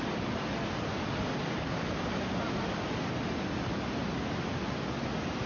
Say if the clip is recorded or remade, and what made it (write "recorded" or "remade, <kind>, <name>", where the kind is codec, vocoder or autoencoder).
recorded